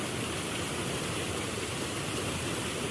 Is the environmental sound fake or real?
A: real